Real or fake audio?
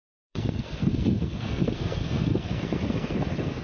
fake